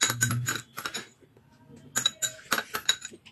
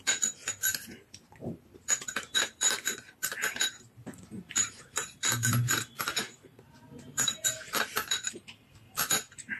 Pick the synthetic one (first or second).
second